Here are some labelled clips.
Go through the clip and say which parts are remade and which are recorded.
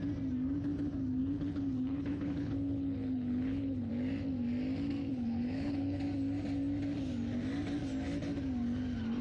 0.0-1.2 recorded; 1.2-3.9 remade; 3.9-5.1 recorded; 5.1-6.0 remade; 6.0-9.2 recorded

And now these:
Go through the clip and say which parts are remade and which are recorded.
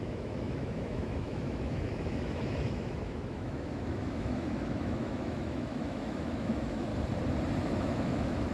0.0-6.9 remade; 6.9-7.6 recorded; 7.6-8.5 remade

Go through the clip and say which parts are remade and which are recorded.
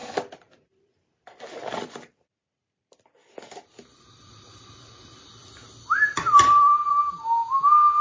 0.0-1.9 remade; 1.9-2.6 recorded; 2.6-6.9 remade; 6.9-8.0 recorded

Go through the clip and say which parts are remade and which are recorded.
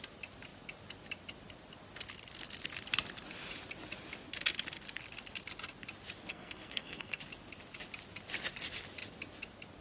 0.0-6.3 recorded; 6.3-7.2 remade; 7.2-9.8 recorded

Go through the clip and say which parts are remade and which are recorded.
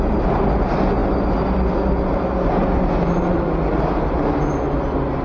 0.0-5.2 recorded